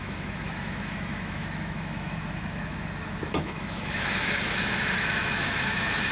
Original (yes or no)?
no